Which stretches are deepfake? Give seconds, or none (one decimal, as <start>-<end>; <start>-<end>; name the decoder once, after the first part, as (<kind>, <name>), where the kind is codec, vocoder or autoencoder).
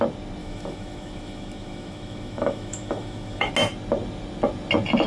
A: 0.4-3.5 (autoencoder, DAC-VAE)